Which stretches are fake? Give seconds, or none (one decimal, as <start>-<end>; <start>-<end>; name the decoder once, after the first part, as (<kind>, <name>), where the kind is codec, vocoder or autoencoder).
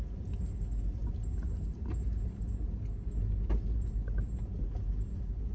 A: none